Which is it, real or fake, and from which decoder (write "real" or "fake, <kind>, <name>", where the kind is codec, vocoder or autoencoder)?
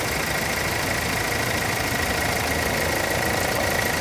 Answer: real